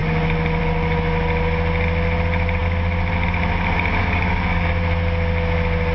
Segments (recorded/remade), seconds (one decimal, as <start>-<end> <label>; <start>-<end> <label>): 0.0-4.0 recorded; 4.0-4.7 remade; 4.7-5.9 recorded